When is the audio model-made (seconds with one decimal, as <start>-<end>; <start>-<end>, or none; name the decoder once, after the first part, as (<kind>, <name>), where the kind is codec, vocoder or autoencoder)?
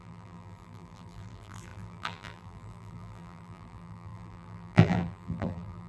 0.0-5.9 (vocoder, BigVGAN v2)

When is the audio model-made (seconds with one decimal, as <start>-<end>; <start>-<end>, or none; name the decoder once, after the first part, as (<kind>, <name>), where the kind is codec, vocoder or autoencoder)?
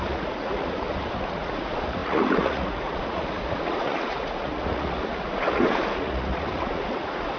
0.0-7.4 (vocoder, Vocos)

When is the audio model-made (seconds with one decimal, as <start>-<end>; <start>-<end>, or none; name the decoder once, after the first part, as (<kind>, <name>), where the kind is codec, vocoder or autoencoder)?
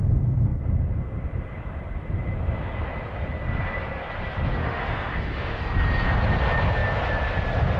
4.6-5.6 (autoencoder, DAC-VAE)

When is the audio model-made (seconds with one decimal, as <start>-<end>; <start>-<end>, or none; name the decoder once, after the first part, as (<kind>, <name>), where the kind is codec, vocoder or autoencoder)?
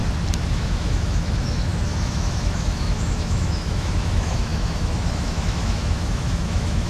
0.5-6.9 (autoencoder, DAC-VAE)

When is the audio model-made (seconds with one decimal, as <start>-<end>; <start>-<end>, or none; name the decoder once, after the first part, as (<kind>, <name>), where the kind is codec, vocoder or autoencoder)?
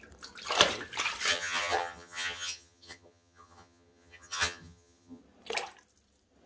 1.3-5.2 (vocoder, HiFi-GAN)